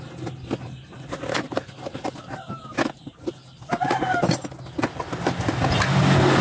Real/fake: real